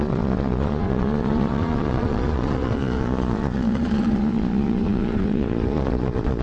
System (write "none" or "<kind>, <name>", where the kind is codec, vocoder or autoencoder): vocoder, Vocos